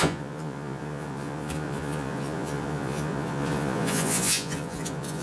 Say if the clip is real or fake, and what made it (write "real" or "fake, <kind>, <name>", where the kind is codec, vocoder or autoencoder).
fake, vocoder, Vocos